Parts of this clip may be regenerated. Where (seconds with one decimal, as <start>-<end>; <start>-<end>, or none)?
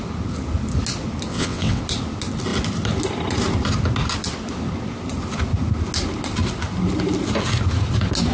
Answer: 1.3-1.8